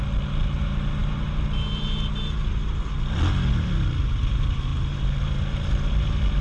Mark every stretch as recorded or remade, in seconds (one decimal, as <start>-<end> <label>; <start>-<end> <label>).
0.0-6.4 recorded